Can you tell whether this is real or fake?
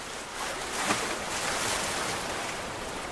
real